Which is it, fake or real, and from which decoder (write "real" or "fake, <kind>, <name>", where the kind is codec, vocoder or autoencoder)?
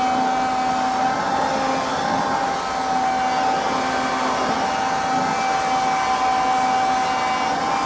real